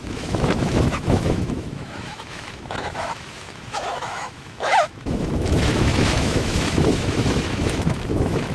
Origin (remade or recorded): remade